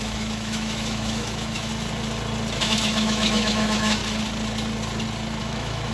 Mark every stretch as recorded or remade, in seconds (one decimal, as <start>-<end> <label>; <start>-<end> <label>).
0.0-1.7 remade; 1.7-2.6 recorded; 2.6-4.0 remade; 4.0-5.4 recorded; 5.4-5.9 remade